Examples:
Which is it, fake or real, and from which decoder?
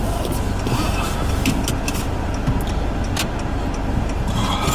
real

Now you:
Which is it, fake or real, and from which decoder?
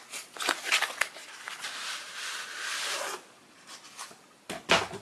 real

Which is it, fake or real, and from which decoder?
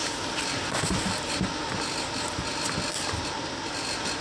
real